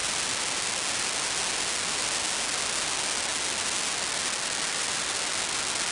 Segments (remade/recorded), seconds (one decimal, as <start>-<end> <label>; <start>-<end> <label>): 0.0-5.9 recorded